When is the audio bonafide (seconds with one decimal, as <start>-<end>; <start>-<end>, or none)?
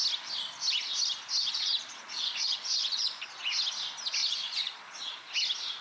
0.0-1.4; 3.2-4.2; 5.3-5.8